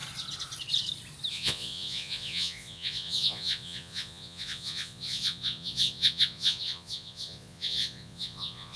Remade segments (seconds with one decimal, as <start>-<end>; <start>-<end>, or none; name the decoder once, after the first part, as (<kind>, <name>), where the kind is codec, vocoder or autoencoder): 1.3-8.8 (vocoder, Vocos)